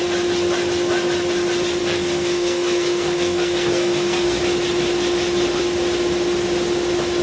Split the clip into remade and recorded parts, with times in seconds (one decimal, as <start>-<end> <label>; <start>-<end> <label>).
0.0-1.8 recorded; 1.8-4.4 remade; 4.4-7.2 recorded